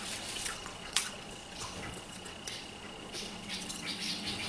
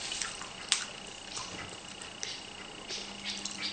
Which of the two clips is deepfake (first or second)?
first